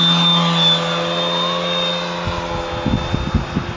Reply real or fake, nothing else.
real